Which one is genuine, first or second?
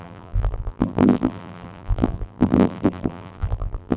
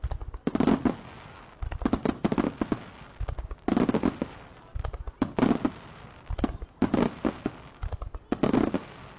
second